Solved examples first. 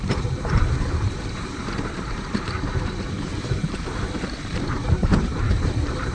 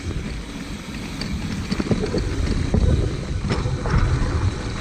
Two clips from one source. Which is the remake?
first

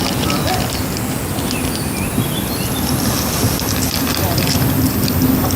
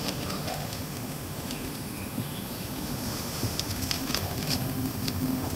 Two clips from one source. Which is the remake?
second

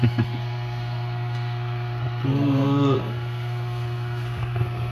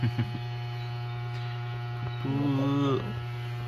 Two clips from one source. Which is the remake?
first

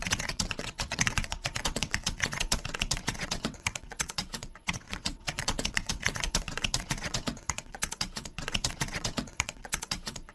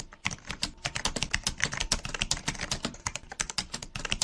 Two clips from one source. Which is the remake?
first